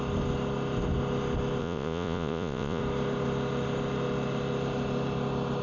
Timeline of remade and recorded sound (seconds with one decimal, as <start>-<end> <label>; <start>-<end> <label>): 0.0-1.6 recorded; 1.6-2.8 remade; 2.8-5.6 recorded